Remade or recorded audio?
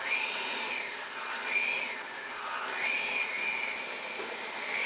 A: remade